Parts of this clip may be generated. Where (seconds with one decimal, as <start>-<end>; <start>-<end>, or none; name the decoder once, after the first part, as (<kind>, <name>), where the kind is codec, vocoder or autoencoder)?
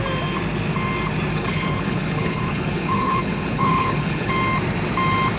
1.3-4.3 (codec, HILCodec)